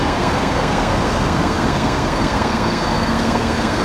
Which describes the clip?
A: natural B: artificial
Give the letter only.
B